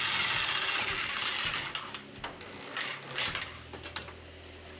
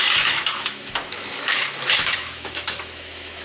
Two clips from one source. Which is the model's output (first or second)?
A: second